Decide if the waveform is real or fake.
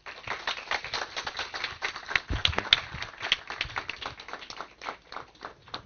real